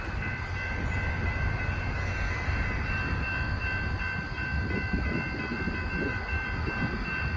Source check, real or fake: real